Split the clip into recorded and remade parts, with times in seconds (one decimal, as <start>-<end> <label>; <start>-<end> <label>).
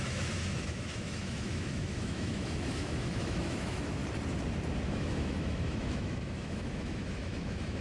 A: 0.0-4.0 remade; 4.0-4.9 recorded; 4.9-7.8 remade